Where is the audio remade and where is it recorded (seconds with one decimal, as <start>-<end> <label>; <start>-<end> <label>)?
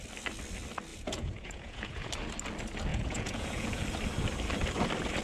0.0-0.9 recorded; 0.9-2.1 remade; 2.1-2.9 recorded; 2.9-3.8 remade; 3.8-5.2 recorded